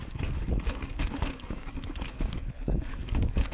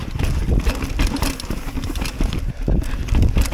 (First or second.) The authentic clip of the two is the second